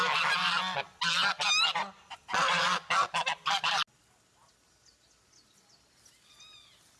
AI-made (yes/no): no